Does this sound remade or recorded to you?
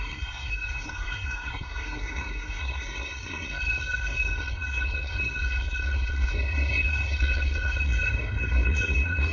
remade